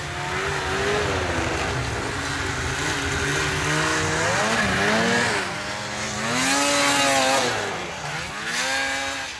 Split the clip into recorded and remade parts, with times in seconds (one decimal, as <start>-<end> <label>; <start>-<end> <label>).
0.0-9.4 recorded